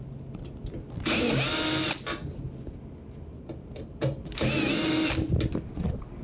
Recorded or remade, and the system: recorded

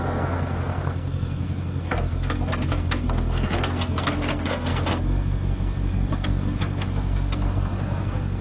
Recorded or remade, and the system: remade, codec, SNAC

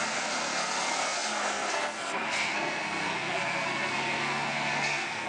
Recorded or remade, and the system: remade, codec, SNAC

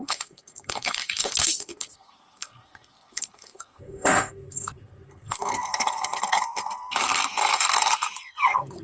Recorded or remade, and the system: remade, codec, SNAC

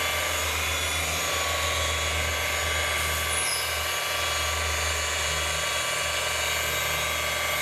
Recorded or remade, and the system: recorded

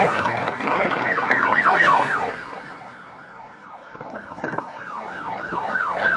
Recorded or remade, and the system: remade, codec, SNAC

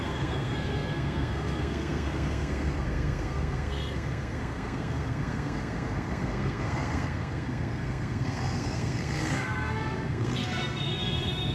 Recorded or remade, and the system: remade, codec, SNAC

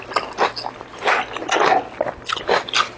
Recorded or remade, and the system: recorded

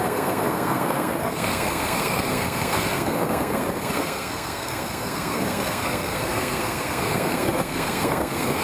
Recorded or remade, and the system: remade, codec, SNAC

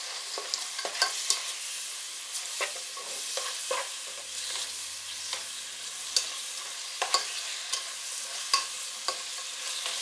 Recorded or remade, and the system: recorded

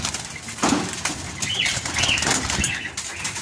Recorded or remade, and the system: recorded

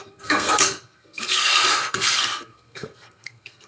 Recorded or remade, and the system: remade, codec, SNAC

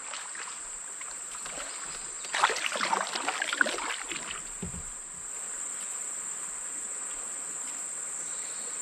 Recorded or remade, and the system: recorded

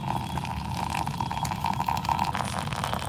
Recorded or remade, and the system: recorded